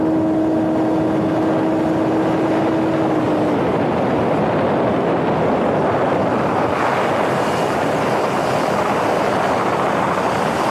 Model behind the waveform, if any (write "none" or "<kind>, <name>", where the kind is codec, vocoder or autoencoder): none